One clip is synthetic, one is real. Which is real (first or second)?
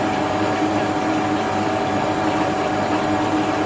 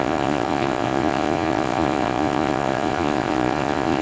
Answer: first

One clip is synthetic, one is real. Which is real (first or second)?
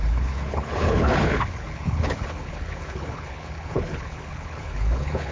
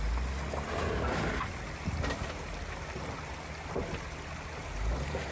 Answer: second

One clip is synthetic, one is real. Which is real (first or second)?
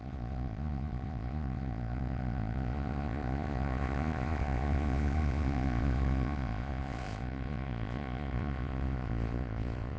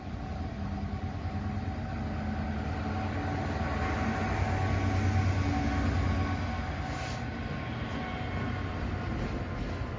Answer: second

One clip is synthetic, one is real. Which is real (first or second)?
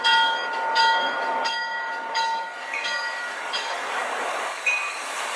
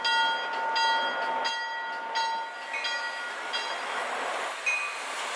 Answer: second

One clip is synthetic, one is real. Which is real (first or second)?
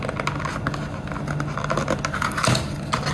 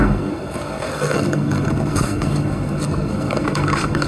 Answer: first